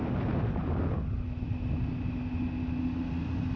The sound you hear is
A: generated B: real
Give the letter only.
B